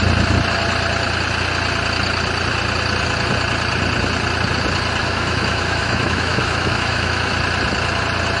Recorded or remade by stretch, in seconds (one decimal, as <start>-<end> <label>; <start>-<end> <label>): 0.0-5.0 recorded; 5.0-7.3 remade; 7.3-8.4 recorded